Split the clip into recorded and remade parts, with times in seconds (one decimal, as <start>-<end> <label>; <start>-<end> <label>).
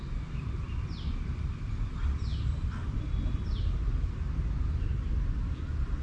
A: 0.0-6.0 recorded